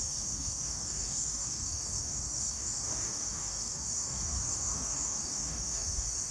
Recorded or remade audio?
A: remade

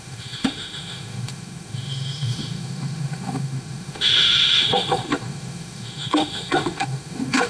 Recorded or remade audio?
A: remade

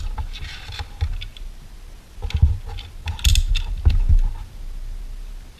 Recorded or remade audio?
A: recorded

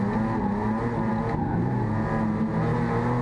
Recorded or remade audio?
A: recorded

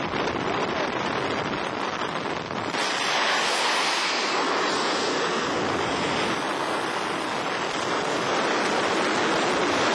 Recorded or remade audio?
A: recorded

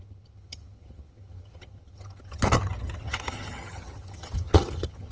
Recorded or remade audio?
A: remade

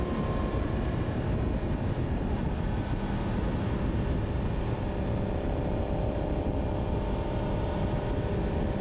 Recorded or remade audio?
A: recorded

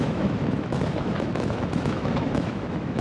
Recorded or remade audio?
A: remade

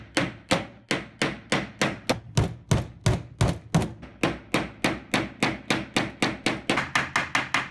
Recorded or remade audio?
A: recorded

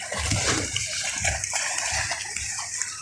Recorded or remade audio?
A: recorded